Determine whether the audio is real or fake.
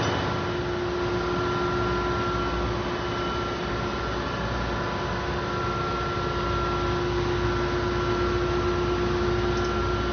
real